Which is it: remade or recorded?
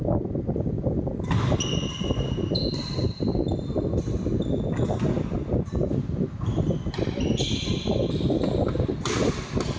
recorded